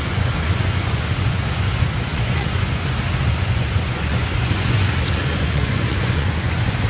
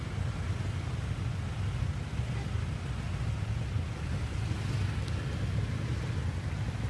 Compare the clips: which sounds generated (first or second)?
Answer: first